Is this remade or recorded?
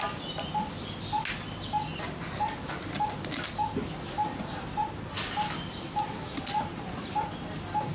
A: recorded